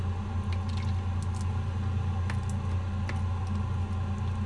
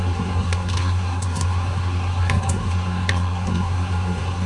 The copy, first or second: second